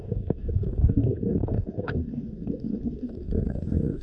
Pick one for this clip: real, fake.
fake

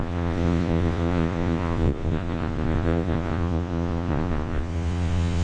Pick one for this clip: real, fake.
fake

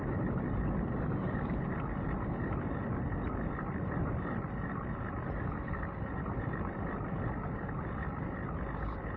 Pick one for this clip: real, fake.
real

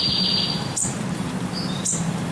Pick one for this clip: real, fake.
real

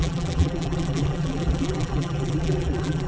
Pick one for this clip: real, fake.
fake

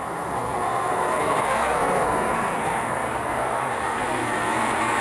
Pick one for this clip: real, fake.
fake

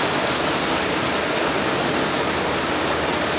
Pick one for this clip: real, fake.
real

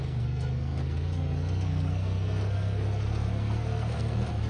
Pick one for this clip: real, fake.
fake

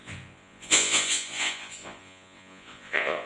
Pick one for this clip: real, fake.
fake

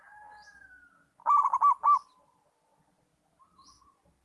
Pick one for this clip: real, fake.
real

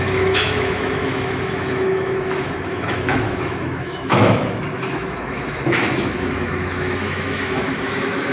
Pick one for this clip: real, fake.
fake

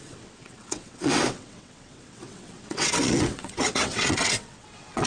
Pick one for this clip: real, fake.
fake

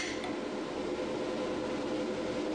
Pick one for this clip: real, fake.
real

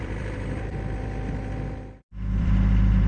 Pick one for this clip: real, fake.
fake